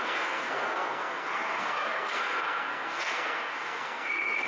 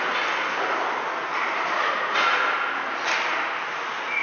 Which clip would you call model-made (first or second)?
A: first